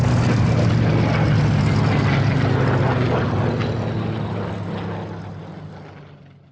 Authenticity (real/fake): real